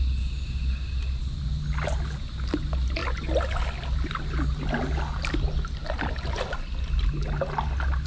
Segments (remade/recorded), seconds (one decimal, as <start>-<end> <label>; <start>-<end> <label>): 0.0-8.1 recorded